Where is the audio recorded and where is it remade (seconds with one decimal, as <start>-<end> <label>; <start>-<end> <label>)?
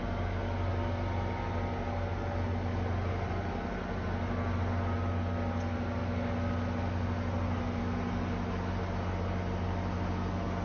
0.0-10.6 recorded